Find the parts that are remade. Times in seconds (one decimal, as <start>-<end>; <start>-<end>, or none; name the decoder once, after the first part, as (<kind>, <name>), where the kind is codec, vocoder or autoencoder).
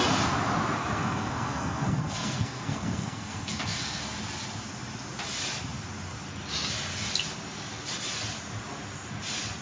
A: 0.8-4.0 (codec, SNAC)